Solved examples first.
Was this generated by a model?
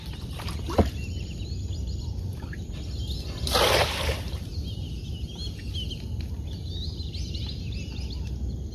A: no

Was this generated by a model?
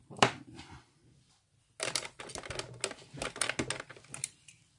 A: no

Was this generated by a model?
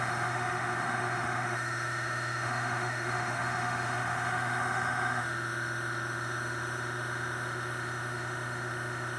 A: yes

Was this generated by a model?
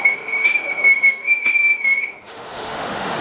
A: yes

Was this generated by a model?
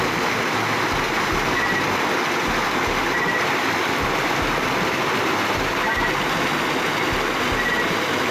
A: no